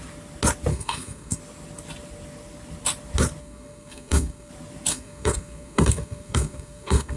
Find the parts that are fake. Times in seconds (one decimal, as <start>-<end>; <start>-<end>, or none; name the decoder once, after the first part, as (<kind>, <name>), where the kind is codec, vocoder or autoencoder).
0.7-1.4 (codec, SNAC); 3.4-4.5; 4.9-7.2